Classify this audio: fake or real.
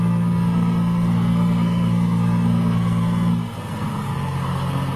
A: fake